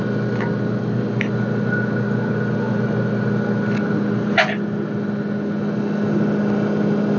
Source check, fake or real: real